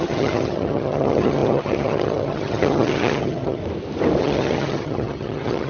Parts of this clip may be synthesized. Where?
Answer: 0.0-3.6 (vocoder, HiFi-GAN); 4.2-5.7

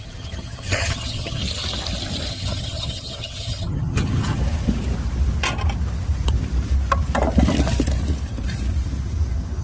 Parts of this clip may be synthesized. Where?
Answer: 0.0-1.4 (vocoder, HiFi-GAN); 2.3-4.4